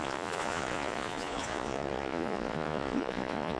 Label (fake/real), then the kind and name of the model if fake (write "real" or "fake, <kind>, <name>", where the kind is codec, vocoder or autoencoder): fake, vocoder, Vocos